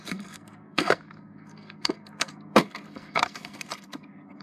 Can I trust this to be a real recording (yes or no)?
no